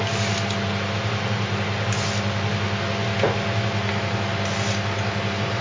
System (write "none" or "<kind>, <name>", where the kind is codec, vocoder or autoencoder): none